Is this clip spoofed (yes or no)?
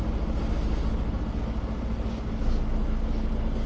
no